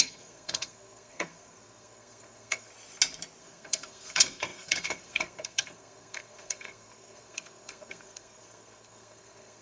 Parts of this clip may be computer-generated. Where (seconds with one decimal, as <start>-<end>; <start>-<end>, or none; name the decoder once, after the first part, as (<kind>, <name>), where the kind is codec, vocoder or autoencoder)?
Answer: 0.0-2.7 (codec, SNAC); 3.4-9.6